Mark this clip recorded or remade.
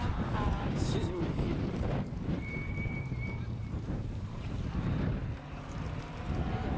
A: remade